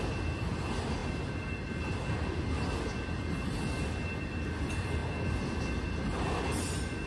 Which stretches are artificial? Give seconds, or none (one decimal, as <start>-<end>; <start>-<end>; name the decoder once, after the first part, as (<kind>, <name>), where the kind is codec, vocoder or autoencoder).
none